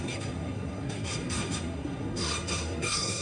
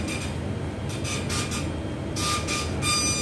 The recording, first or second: second